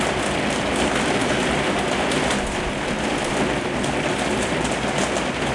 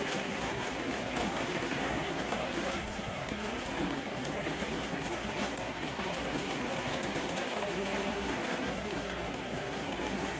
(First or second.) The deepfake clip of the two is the second